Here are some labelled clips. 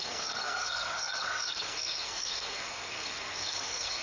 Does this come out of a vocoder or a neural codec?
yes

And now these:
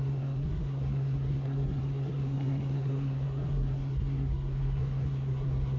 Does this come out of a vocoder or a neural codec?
yes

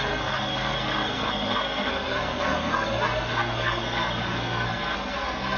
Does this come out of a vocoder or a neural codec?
yes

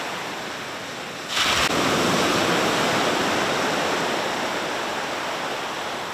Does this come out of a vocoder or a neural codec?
no